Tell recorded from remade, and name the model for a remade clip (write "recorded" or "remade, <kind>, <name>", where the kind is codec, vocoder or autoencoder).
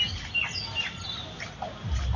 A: recorded